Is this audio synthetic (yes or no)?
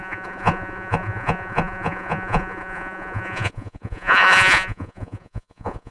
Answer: yes